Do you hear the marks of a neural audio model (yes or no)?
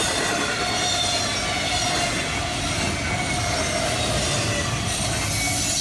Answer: no